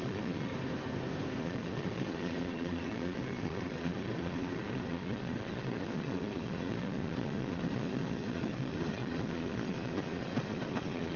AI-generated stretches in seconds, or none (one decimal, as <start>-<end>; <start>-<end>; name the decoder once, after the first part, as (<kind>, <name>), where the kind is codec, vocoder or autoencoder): 0.0-0.5 (vocoder, Vocos); 1.4-11.2

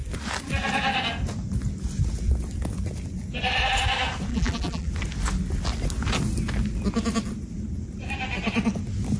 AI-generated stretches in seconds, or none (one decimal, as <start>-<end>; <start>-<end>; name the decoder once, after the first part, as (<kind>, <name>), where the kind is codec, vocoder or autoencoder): 4.3-4.9 (vocoder, BigVGAN v2)

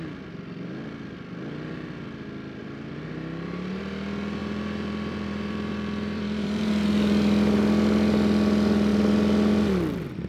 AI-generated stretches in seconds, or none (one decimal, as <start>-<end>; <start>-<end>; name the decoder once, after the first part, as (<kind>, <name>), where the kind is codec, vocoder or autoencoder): 2.6-3.8 (vocoder, BigVGAN v2); 4.4-6.7

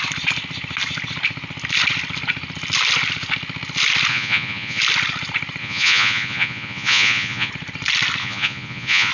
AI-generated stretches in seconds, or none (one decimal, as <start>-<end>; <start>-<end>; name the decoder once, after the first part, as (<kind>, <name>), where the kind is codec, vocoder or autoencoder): 4.1-4.8 (vocoder, Vocos); 5.6-7.5; 8.2-9.1

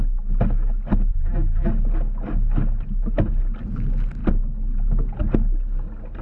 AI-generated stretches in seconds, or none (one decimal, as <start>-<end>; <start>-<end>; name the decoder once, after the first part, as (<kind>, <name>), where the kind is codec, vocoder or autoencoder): 1.1-1.7 (vocoder, BigVGAN v2)

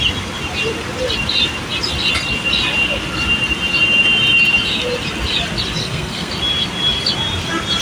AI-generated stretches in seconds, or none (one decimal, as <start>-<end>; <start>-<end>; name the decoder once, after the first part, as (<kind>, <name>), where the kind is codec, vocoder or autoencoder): 5.8-6.3 (codec, SNAC)

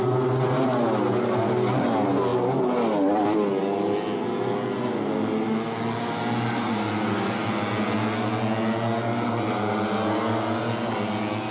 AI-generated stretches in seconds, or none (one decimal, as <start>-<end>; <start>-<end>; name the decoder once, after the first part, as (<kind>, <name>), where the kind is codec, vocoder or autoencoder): none

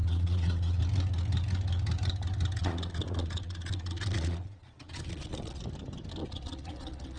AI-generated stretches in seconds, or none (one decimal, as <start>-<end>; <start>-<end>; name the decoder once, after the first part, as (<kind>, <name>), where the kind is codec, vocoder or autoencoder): 0.0-0.8 (vocoder, Vocos); 2.6-5.6; 6.2-7.2